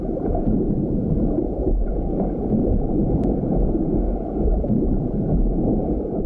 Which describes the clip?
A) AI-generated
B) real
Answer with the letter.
A